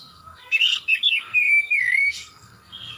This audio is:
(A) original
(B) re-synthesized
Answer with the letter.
B